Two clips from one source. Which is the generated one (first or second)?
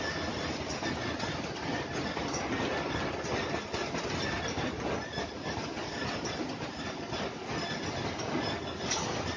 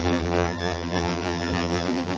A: second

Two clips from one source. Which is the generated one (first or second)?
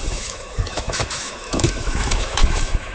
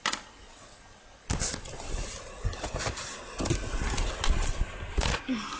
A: first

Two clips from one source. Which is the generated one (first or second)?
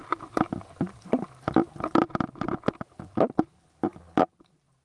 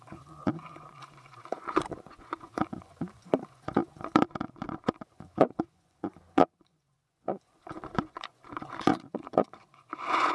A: second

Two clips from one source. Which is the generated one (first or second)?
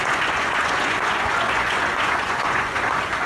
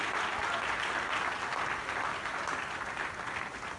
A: first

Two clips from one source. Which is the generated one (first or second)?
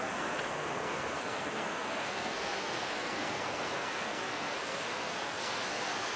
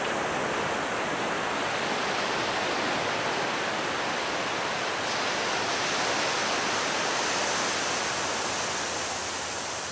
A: first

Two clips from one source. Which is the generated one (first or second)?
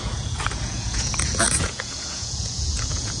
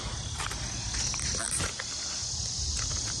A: first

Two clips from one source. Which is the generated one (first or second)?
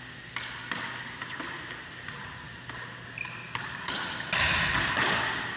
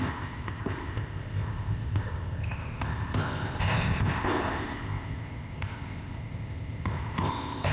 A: second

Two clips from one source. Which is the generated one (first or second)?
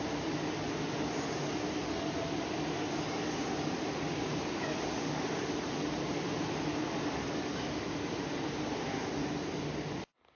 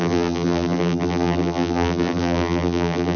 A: second